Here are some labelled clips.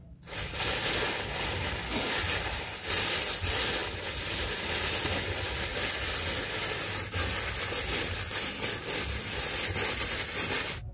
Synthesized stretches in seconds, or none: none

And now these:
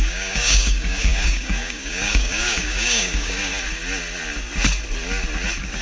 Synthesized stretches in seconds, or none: 0.0-3.5 (codec, DAC)

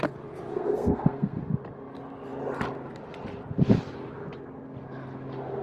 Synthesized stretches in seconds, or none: 0.5-1.4 (codec, SNAC)

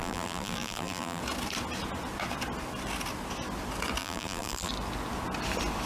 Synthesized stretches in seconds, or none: 0.0-1.2 (vocoder, BigVGAN v2); 4.0-4.7

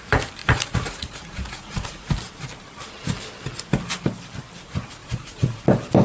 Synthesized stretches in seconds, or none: 0.4-2.1 (vocoder, Vocos); 5.0-5.6